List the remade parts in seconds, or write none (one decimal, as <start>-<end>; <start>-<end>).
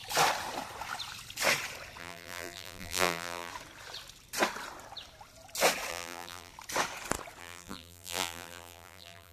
2.0-3.5; 5.9-6.5; 7.4-9.3